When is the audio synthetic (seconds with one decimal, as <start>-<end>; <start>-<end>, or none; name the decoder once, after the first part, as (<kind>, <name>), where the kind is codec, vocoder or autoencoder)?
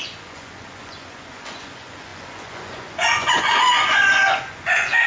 0.0-5.1 (vocoder, Vocos)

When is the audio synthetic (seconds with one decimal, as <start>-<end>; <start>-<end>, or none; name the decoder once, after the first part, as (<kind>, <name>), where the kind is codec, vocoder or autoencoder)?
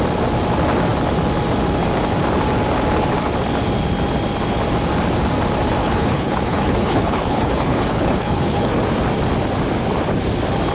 5.8-8.7 (codec, HILCodec)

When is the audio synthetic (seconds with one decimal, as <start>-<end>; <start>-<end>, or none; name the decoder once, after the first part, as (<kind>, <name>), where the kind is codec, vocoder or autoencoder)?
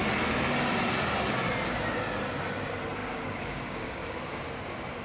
3.0-4.4 (codec, DAC)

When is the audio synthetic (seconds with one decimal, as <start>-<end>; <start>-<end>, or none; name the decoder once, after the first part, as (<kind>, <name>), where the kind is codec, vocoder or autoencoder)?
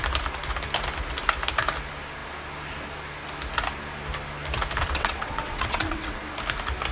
4.8-6.2 (vocoder, WaveNeXt)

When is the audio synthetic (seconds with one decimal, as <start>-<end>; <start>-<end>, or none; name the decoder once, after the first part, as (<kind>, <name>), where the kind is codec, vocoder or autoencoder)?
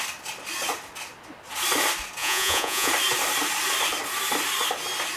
2.2-2.9 (vocoder, Vocos)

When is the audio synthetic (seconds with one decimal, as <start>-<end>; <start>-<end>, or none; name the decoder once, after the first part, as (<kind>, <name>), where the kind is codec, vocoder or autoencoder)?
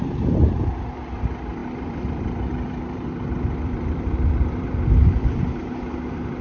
0.0-6.4 (vocoder, BigVGAN v2)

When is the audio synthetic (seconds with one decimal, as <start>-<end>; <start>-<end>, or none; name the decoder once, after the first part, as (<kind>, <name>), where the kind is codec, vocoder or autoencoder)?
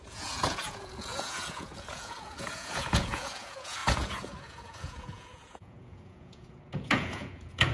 0.0-7.7 (vocoder, Vocos)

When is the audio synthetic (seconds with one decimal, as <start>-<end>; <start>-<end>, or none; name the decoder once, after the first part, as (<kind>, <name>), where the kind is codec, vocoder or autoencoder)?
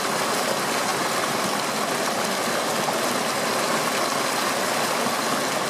none